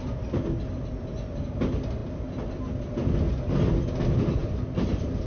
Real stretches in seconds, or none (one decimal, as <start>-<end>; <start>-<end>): 0.0-4.4